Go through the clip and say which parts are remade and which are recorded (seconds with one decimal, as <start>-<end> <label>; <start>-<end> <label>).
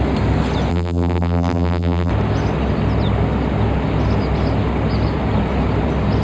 0.0-0.7 recorded; 0.7-2.1 remade; 2.1-6.2 recorded